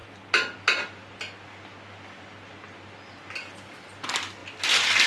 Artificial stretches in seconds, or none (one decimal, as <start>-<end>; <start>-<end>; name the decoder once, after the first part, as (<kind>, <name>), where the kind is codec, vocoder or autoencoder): none